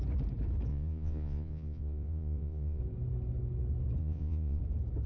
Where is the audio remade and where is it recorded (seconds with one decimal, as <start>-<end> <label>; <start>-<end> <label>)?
0.0-0.7 recorded; 0.7-2.8 remade; 2.8-4.0 recorded; 4.0-4.6 remade; 4.6-5.1 recorded

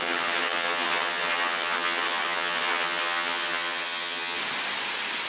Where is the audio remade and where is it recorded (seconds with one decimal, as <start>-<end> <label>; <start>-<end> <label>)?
0.0-4.4 remade; 4.4-5.3 recorded

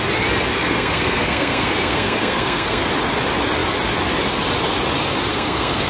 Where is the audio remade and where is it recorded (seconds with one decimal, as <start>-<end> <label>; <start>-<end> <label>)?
0.0-0.5 recorded; 0.5-2.9 remade; 2.9-5.3 recorded; 5.3-5.9 remade

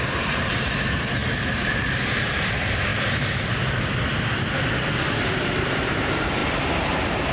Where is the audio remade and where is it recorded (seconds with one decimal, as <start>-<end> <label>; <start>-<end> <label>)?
0.0-1.2 remade; 1.2-2.1 recorded; 2.1-2.9 remade; 2.9-5.3 recorded; 5.3-7.3 remade

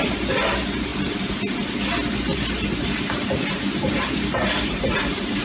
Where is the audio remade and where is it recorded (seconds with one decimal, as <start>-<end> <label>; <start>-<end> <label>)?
0.0-0.9 recorded; 0.9-1.5 remade; 1.5-2.3 recorded; 2.3-5.0 remade; 5.0-5.4 recorded

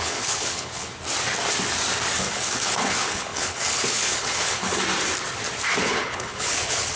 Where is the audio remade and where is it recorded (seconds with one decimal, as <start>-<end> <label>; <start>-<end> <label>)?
0.0-0.9 remade; 0.9-2.2 recorded; 2.2-4.7 remade; 4.7-5.8 recorded; 5.8-7.0 remade

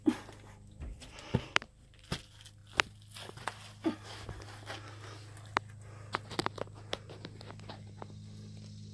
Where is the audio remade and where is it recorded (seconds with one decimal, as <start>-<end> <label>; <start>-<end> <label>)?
0.0-8.9 recorded

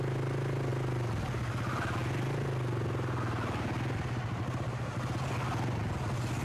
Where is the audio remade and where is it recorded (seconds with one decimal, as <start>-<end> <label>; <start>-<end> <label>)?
0.0-6.4 recorded